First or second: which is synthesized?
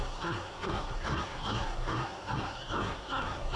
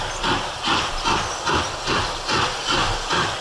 first